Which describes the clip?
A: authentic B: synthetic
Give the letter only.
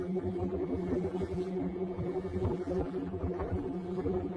B